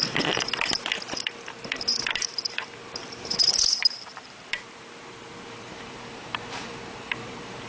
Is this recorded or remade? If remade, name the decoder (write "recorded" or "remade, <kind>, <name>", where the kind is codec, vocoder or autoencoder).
remade, vocoder, BigVGAN v2